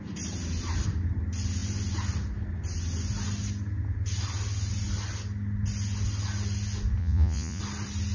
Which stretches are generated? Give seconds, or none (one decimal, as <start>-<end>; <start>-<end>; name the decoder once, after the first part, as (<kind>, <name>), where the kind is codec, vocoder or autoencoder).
7.0-7.6 (vocoder, Vocos)